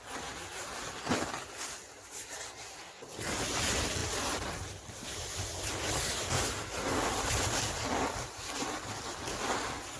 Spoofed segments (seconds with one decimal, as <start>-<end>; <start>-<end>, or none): none